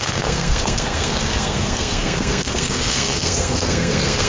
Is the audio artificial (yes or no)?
yes